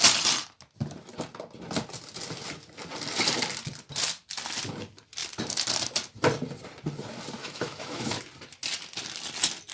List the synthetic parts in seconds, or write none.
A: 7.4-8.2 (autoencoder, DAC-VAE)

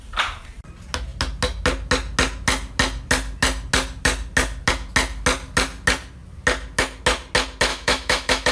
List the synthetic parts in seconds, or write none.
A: 7.7-8.5 (autoencoder, DAC-VAE)

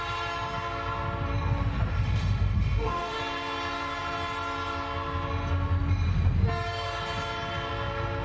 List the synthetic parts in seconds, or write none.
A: 1.9-3.2 (autoencoder, DAC-VAE)

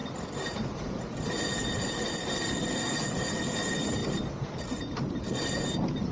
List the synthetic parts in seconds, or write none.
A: none

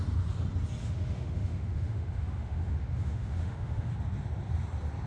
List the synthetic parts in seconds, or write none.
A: 0.8-3.9 (autoencoder, DAC-VAE)

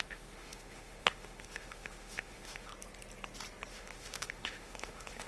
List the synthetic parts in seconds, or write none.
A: 0.0-2.7 (autoencoder, DAC-VAE); 3.7-5.3